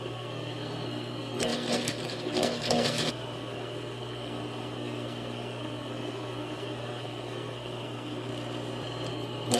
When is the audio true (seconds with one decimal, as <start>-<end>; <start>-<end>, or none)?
8.3-9.1